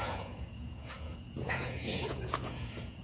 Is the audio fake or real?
fake